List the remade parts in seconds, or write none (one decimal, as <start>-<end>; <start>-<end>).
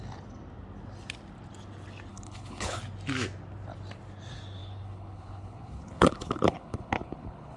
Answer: 2.1-2.8; 4.6-7.6